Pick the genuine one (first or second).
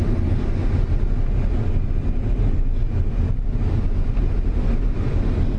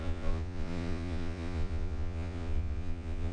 first